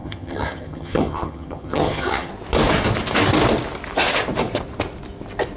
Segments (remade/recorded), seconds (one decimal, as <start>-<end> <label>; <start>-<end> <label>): 0.0-2.3 remade; 2.3-5.6 recorded

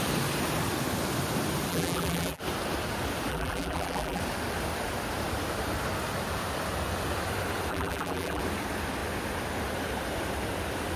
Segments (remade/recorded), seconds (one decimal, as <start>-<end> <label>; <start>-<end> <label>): 0.0-1.7 recorded; 1.7-2.4 remade; 2.4-3.3 recorded; 3.3-4.2 remade; 4.2-7.7 recorded; 7.7-8.4 remade; 8.4-11.0 recorded

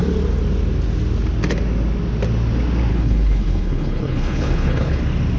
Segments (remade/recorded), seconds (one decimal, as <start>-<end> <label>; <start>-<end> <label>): 0.0-2.9 recorded; 2.9-5.0 remade; 5.0-5.4 recorded

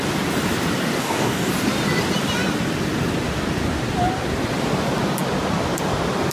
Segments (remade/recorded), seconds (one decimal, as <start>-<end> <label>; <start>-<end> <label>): 0.0-1.0 recorded; 1.0-1.5 remade; 1.5-6.3 recorded

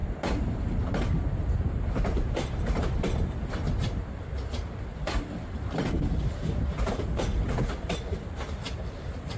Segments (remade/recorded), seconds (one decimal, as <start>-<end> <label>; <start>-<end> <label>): 0.0-3.6 remade; 3.6-6.3 recorded; 6.3-9.4 remade

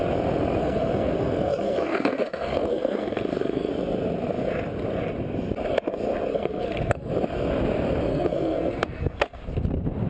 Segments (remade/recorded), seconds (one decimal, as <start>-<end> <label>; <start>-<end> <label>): 0.0-0.6 recorded; 0.6-3.7 remade; 3.7-6.3 recorded; 6.3-7.1 remade; 7.1-8.1 recorded; 8.1-9.4 remade; 9.4-10.1 recorded

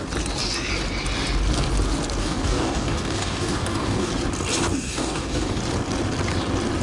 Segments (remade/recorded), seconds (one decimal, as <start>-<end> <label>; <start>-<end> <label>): 0.0-2.2 recorded; 2.2-4.1 remade; 4.1-4.7 recorded; 4.7-5.6 remade; 5.6-6.8 recorded